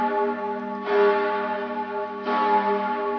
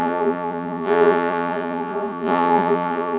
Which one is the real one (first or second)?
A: first